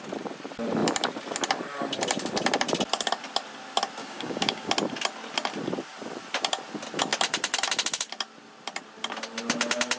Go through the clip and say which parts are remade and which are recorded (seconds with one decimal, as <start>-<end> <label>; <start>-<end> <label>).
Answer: 0.0-4.0 recorded; 4.0-4.7 remade; 4.7-10.0 recorded